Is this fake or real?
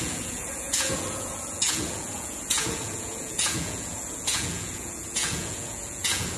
fake